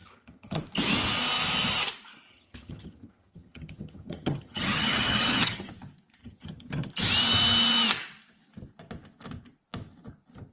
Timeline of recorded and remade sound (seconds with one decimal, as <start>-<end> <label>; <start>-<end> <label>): 0.0-0.6 remade; 0.6-2.3 recorded; 2.3-5.7 remade; 5.7-6.2 recorded; 6.2-6.9 remade; 6.9-10.5 recorded